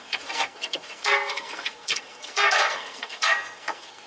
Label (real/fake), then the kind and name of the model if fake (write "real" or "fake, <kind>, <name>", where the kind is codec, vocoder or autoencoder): fake, codec, SNAC